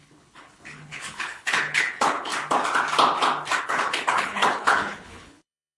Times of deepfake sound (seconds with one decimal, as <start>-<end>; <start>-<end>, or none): 0.0-2.3; 3.6-5.8